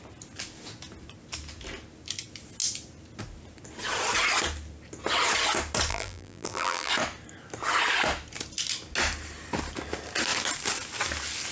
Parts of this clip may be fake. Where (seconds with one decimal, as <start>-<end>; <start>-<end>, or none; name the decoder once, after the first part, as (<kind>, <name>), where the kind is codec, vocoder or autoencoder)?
5.9-6.9 (vocoder, BigVGAN v2)